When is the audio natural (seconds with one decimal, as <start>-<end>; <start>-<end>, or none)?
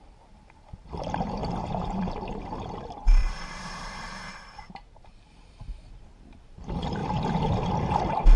0.0-1.4; 2.1-3.2; 5.3-8.4